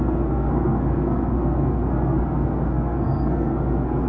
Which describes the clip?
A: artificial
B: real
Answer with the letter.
A